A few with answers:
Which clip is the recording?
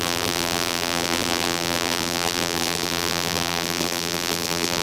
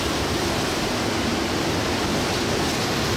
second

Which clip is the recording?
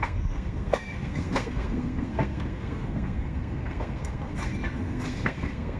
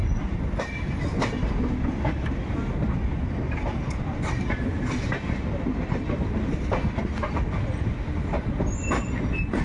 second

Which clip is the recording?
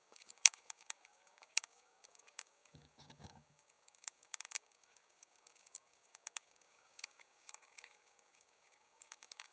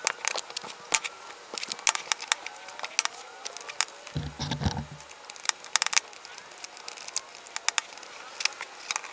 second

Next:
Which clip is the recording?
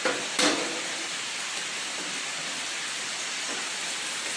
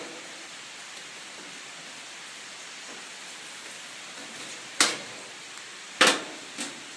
second